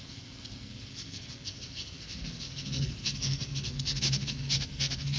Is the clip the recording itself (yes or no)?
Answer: no